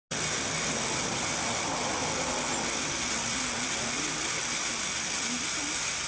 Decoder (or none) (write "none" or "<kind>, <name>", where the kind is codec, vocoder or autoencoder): none